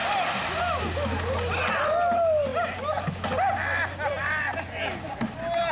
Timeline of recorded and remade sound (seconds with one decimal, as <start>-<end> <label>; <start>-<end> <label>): 0.0-5.7 recorded

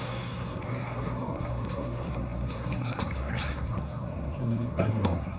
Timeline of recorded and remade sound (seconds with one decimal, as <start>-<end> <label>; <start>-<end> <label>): 0.0-5.4 remade

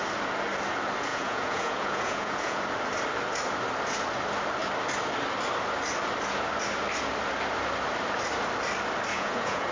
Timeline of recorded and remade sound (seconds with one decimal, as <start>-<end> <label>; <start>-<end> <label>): 0.0-1.1 recorded; 1.1-2.6 remade; 2.6-9.1 recorded; 9.1-9.7 remade

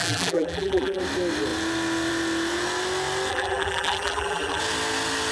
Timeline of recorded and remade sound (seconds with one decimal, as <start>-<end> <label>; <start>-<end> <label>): 0.0-1.0 remade; 1.0-3.3 recorded; 3.3-4.6 remade; 4.6-5.3 recorded

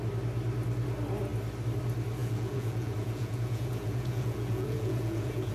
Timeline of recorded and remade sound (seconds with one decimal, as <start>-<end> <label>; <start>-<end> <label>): 0.0-2.2 recorded; 2.2-5.5 remade